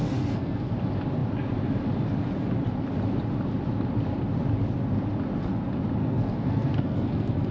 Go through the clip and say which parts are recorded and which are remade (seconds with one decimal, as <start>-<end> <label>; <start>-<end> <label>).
0.0-0.7 remade; 0.7-6.0 recorded; 6.0-7.5 remade